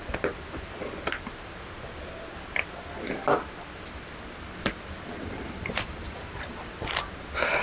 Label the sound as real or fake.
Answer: real